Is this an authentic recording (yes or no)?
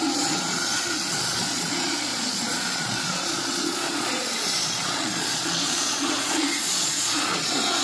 no